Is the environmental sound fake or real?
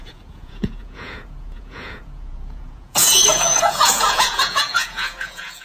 fake